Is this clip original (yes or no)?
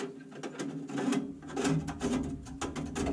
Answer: yes